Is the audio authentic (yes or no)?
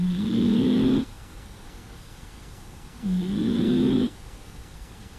no